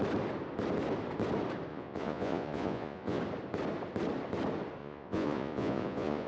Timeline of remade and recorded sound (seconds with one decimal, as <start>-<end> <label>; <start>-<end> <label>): 0.0-1.7 recorded; 1.7-3.2 remade; 3.2-4.8 recorded; 4.8-6.3 remade